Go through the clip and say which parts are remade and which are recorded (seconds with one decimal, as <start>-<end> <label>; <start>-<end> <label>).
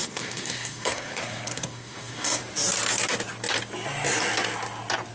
0.0-2.4 remade; 2.4-5.1 recorded